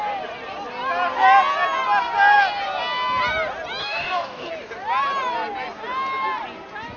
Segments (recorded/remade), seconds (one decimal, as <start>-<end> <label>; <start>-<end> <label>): 0.0-3.8 recorded; 3.8-4.5 remade; 4.5-7.0 recorded